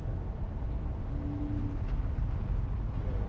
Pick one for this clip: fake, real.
real